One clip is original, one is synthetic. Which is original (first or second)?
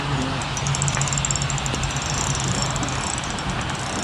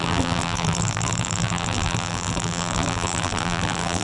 first